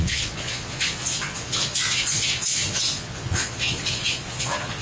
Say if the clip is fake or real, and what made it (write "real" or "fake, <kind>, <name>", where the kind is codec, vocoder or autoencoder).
fake, vocoder, Vocos